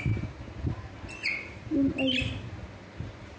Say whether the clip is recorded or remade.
recorded